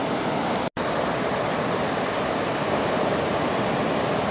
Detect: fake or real real